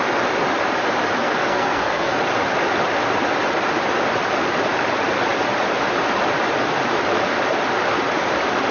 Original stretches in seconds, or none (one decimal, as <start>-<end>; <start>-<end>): 0.0-1.2; 2.1-8.7

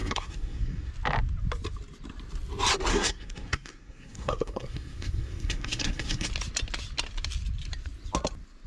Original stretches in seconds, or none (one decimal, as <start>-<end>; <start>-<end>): 0.9-2.9; 6.3-8.7

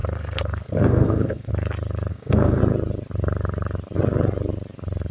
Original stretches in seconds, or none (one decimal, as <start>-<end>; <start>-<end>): 1.5-2.1; 2.6-5.1

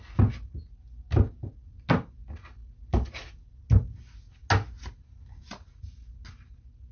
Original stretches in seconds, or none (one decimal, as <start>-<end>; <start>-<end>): 0.0-6.9

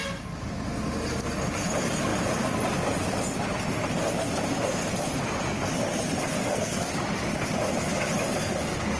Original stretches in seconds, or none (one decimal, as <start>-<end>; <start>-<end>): 0.0-6.4; 6.9-9.0